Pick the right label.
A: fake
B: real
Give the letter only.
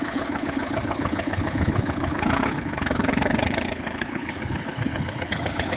A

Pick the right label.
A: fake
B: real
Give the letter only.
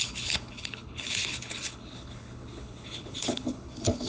A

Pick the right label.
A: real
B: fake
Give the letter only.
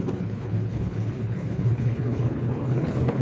B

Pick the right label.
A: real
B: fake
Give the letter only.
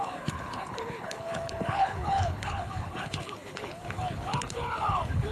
B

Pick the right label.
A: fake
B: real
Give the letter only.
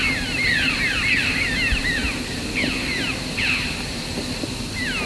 B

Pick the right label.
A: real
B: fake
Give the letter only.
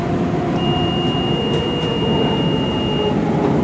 A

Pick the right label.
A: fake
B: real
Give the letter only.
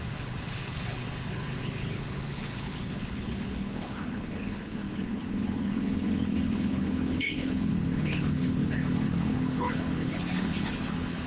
A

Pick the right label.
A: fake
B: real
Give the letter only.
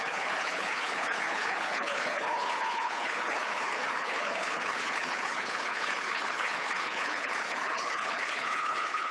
A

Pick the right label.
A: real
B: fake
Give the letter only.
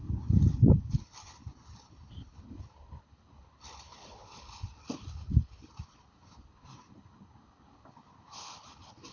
B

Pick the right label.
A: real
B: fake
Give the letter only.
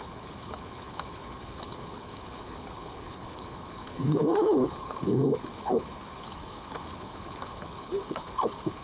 B